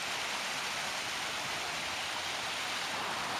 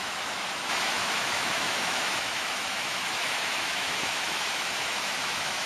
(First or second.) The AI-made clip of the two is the second